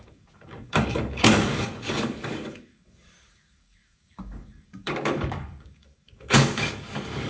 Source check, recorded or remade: remade